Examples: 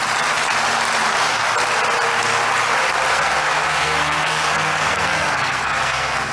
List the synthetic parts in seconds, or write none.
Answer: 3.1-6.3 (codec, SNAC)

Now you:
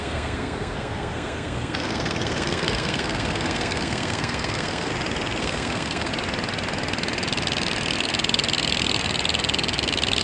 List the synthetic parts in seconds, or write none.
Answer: 0.0-4.9 (codec, SNAC); 5.4-6.1

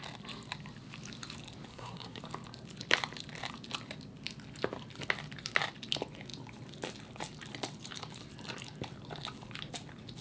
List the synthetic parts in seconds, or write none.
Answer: 1.7-2.2 (codec, SNAC)

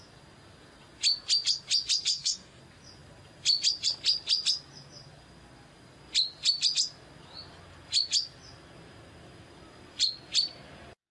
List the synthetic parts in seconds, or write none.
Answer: 2.1-2.6 (codec, SNAC)

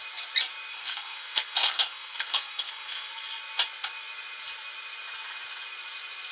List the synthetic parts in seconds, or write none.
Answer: 0.7-3.1 (codec, SNAC)

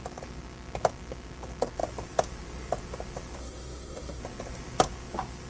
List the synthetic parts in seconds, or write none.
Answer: 3.4-4.2 (codec, SNAC)